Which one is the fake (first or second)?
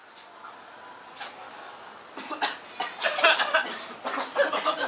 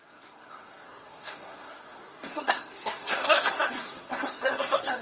second